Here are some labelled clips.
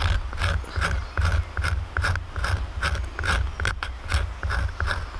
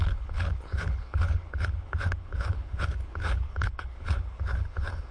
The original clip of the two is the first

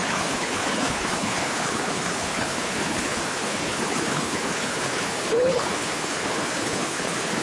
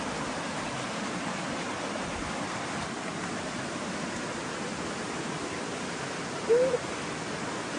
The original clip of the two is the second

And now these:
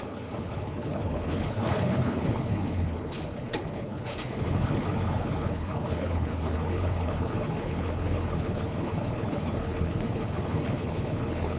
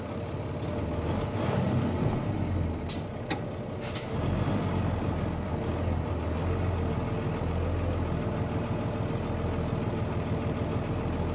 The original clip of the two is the second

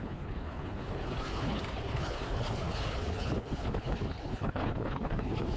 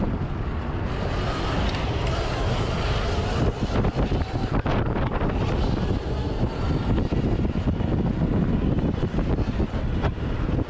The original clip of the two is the second